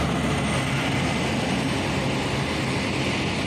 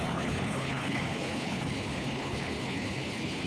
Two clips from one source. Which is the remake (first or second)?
second